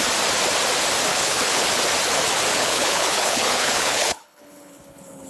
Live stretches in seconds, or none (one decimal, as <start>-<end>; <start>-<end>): 0.0-1.1; 1.8-2.5

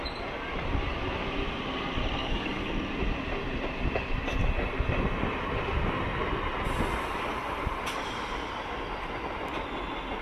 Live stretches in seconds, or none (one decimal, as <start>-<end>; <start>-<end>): 0.0-2.2; 2.7-10.2

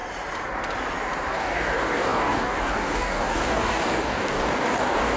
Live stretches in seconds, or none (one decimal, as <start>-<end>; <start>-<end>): 0.0-1.3

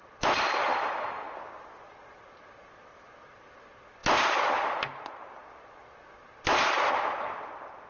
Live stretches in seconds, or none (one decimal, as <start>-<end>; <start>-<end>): 0.0-7.9

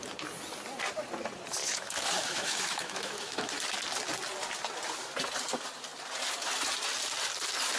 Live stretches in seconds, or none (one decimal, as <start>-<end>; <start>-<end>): 0.0-1.6; 3.5-7.8

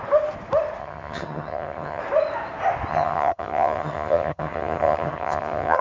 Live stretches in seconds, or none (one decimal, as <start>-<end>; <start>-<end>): 0.0-0.8; 2.0-2.9